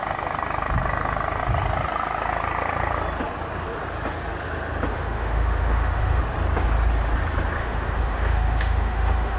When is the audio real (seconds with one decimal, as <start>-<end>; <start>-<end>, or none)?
0.0-4.9; 6.2-7.6